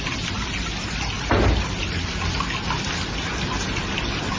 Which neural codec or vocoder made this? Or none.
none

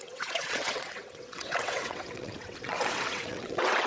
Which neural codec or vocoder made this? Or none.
vocoder, WaveNeXt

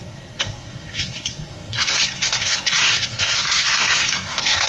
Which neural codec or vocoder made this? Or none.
codec, SNAC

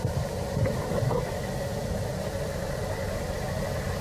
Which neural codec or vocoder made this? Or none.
none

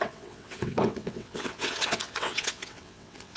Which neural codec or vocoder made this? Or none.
vocoder, WaveNeXt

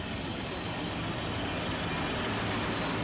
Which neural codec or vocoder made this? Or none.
none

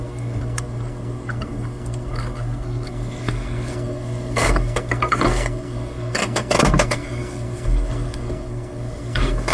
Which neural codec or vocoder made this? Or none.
codec, SNAC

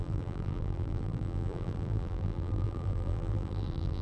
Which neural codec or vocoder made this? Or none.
vocoder, BigVGAN v2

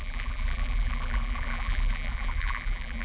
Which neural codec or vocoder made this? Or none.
vocoder, BigVGAN v2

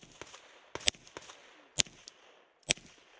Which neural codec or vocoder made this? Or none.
none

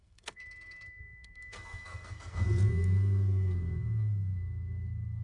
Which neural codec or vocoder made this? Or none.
codec, SNAC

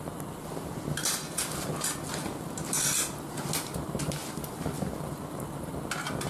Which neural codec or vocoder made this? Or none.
none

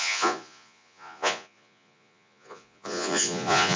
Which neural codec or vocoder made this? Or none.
vocoder, Vocos